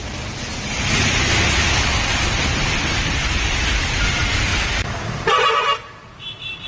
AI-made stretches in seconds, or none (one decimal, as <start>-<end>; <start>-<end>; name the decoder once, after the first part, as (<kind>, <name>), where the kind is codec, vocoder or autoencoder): none